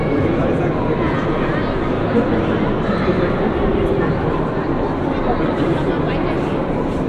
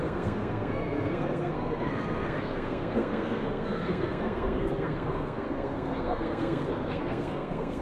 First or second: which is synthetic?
second